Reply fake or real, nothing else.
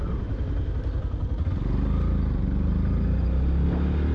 real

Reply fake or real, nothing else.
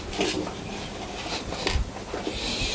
real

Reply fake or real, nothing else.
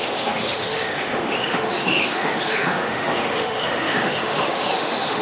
fake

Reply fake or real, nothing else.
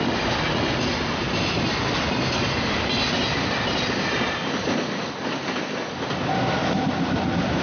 real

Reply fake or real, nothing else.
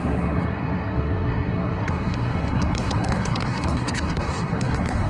fake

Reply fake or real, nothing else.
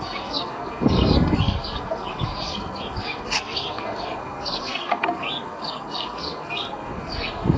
fake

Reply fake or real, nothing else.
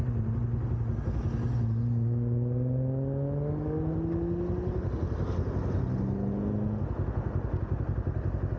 real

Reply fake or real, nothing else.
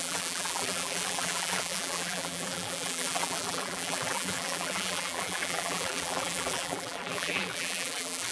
fake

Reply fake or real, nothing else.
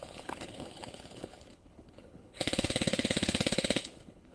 fake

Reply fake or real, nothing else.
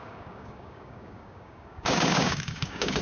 fake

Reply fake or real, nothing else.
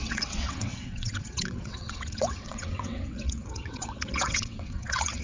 fake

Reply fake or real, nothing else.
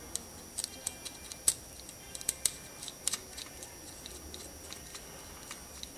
real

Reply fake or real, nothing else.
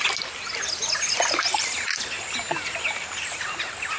real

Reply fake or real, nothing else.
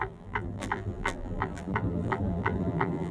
fake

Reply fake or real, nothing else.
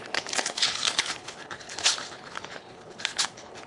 fake